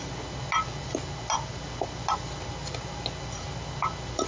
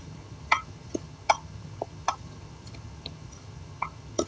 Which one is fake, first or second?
second